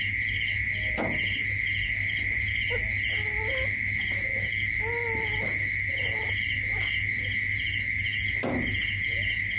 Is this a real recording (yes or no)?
yes